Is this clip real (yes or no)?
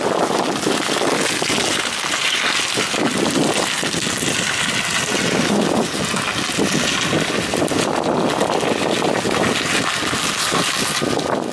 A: yes